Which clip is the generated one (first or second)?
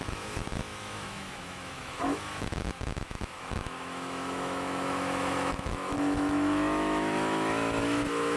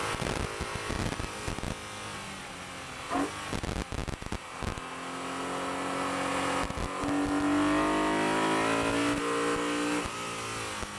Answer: first